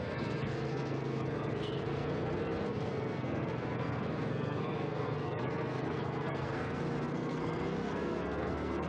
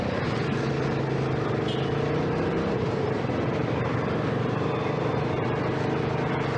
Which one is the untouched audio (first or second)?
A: second